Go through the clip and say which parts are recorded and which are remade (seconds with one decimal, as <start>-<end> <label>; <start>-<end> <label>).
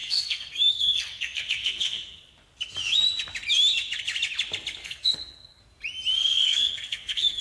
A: 0.0-2.3 remade; 2.3-4.8 recorded; 4.8-5.6 remade; 5.6-6.2 recorded; 6.2-7.4 remade